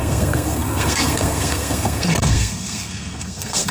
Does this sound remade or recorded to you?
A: remade